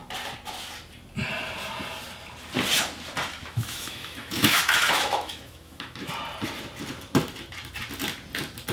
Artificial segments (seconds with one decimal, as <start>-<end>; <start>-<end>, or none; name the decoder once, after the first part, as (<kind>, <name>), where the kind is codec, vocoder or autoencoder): 3.4-6.1 (autoencoder, DAC-VAE)